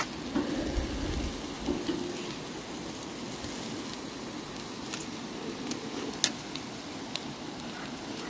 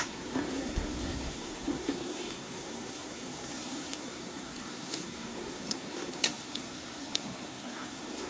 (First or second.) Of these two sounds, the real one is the first